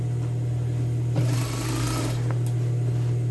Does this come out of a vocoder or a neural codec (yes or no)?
no